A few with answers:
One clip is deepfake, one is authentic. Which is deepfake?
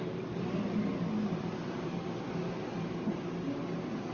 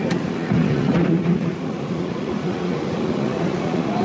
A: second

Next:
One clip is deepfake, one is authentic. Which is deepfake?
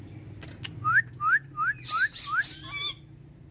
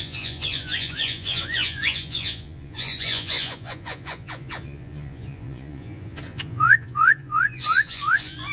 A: second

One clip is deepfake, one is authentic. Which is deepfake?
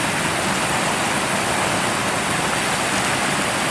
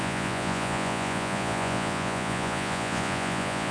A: second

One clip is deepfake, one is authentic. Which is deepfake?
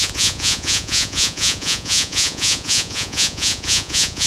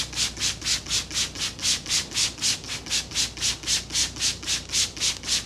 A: first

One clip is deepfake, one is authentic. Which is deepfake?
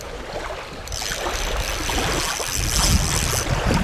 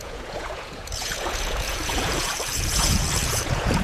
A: second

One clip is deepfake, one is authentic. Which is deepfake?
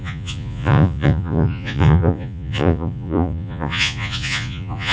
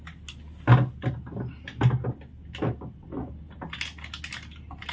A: first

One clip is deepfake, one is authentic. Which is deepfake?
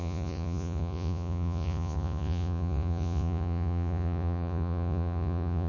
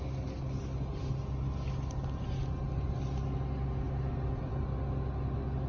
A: first